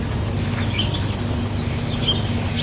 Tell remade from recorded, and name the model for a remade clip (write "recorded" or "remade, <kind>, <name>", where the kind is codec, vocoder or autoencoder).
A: recorded